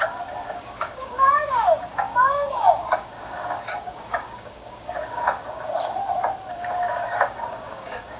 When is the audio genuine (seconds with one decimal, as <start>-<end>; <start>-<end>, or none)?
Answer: 6.0-6.5